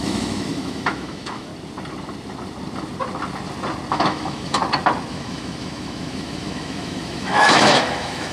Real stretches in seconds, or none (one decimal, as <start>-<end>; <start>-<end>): 1.5-3.9; 4.6-5.1